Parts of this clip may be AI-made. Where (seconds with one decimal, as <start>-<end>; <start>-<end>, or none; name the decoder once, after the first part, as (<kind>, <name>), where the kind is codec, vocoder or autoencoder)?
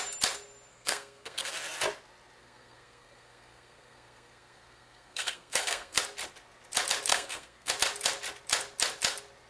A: 0.7-1.5 (codec, SNAC); 2.4-6.0; 7.1-7.7